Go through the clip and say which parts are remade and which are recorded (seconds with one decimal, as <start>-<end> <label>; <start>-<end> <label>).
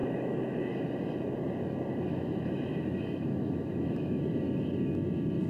0.0-0.7 remade; 0.7-2.1 recorded; 2.1-4.2 remade; 4.2-5.5 recorded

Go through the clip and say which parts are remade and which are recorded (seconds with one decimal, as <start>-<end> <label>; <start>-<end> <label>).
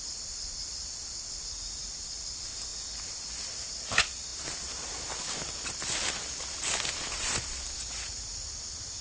0.0-9.0 recorded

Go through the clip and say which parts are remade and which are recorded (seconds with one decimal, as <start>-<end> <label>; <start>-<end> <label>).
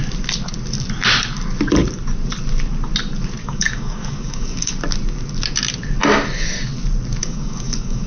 0.0-3.4 recorded; 3.4-4.7 remade; 4.7-7.2 recorded; 7.2-8.1 remade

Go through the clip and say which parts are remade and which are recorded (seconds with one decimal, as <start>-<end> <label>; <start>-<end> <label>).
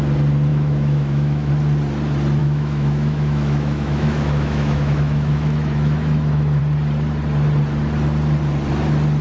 0.0-0.5 recorded; 0.5-1.5 remade; 1.5-2.4 recorded; 2.4-6.6 remade; 6.6-9.2 recorded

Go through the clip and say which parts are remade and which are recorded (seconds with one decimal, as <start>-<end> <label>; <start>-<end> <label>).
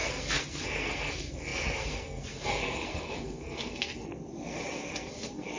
0.0-5.6 remade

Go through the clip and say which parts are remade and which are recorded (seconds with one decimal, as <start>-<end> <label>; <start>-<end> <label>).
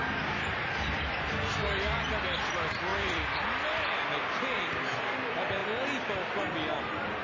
0.0-2.9 recorded; 2.9-4.0 remade; 4.0-7.2 recorded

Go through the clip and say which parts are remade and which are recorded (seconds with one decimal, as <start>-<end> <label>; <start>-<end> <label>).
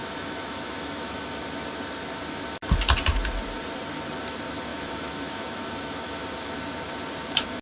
0.0-1.4 remade; 1.4-4.7 recorded; 4.7-6.2 remade; 6.2-7.6 recorded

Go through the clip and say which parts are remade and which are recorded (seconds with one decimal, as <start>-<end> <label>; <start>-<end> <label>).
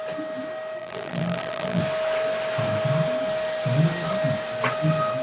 0.0-0.8 recorded; 0.8-1.8 remade; 1.8-5.2 recorded